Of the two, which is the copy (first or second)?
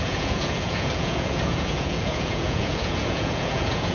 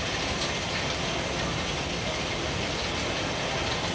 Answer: first